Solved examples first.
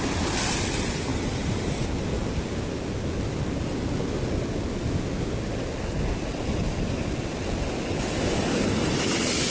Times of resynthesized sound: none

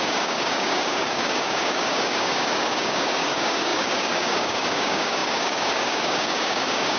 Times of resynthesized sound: 0.0-7.0 (codec, DAC)